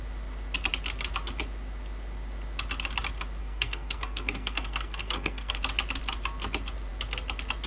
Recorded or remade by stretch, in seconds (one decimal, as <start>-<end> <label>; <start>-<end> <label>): 0.0-3.4 recorded; 3.4-5.6 remade; 5.6-7.7 recorded